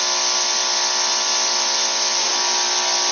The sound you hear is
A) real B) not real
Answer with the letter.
A